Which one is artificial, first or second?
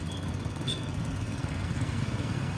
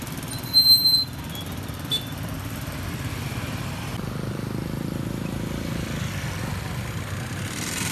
first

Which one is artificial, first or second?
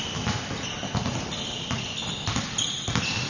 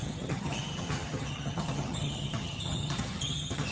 second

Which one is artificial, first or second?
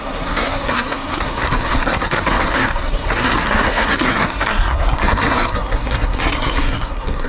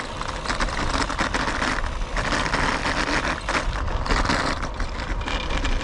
first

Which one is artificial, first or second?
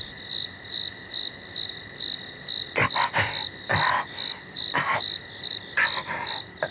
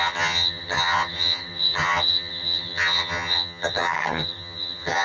second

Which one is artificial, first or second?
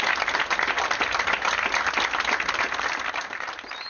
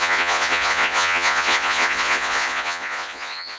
second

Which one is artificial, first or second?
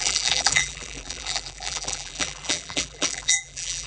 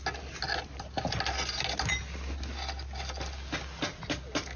first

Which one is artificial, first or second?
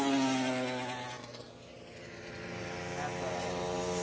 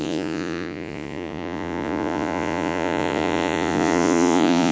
second